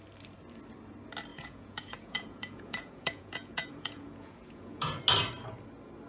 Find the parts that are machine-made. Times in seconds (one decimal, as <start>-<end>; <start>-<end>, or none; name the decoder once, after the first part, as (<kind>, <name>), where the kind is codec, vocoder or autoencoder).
1.3-5.0 (vocoder, Vocos)